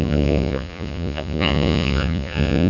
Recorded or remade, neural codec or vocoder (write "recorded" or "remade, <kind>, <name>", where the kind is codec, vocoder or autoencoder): remade, vocoder, Vocos